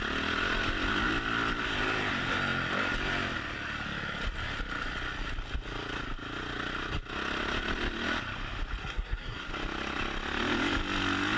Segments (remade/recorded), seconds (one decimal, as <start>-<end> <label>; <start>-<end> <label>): 0.0-8.8 recorded; 8.8-9.5 remade; 9.5-11.4 recorded

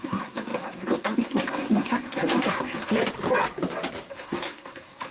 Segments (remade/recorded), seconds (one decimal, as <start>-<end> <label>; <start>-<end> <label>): 0.0-3.0 remade; 3.0-4.1 recorded; 4.1-5.1 remade

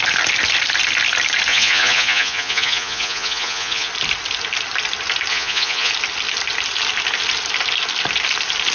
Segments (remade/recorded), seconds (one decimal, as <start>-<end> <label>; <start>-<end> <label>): 0.0-1.5 recorded; 1.5-3.9 remade; 3.9-5.3 recorded; 5.3-5.9 remade; 5.9-8.7 recorded

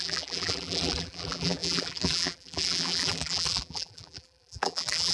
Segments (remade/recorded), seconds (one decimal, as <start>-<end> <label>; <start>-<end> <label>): 0.0-5.1 remade

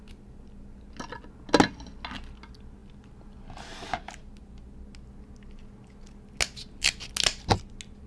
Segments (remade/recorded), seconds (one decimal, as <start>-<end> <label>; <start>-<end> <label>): 0.0-8.1 recorded

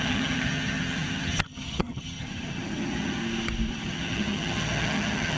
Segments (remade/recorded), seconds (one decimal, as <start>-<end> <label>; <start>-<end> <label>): 0.0-3.2 remade; 3.2-3.7 recorded; 3.7-5.4 remade

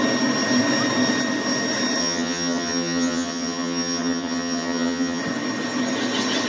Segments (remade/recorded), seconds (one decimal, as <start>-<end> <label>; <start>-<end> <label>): 0.0-2.0 recorded; 2.0-5.2 remade; 5.2-6.5 recorded